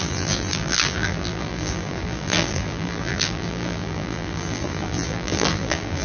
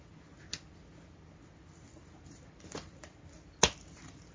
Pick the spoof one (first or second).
first